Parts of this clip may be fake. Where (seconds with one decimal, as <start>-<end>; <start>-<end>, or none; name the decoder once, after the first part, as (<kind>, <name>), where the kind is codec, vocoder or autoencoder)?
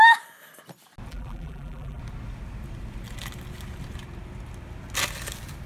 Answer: 1.1-2.0 (vocoder, BigVGAN v2)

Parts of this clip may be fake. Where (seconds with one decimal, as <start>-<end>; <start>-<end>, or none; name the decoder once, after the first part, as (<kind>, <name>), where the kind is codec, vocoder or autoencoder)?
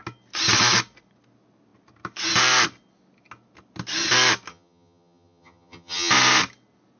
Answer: 4.5-6.1 (vocoder, HiFi-GAN)